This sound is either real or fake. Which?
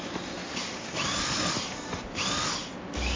real